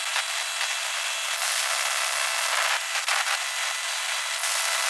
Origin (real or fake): real